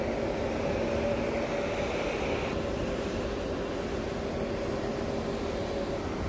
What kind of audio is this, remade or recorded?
recorded